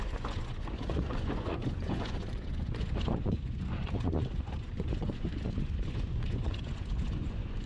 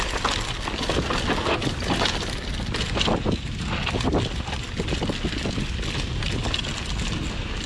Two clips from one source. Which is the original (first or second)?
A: second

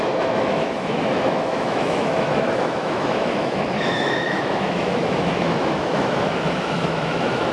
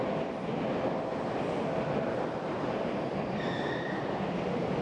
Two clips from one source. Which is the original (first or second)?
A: second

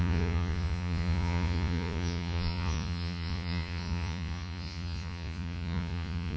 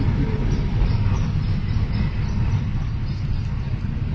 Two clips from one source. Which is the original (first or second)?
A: second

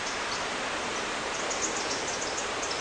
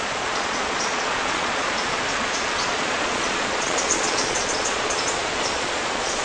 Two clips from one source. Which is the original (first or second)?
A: first